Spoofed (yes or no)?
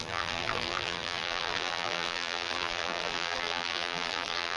yes